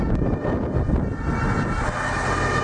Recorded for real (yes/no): yes